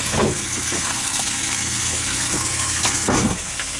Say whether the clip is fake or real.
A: fake